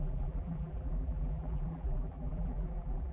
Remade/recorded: remade